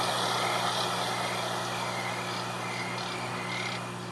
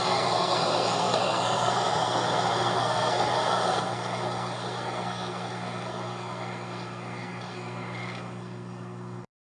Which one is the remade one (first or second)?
second